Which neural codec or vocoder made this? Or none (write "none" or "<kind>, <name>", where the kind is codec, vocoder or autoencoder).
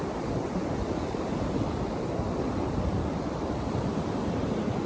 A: vocoder, BigVGAN v2